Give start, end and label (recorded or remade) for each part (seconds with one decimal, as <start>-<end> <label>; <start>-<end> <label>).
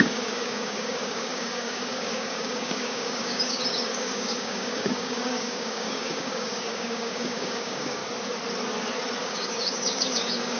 0.0-8.0 remade; 8.0-9.2 recorded; 9.2-10.6 remade